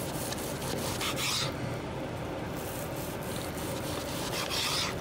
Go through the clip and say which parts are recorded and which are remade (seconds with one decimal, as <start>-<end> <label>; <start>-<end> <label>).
0.0-5.0 recorded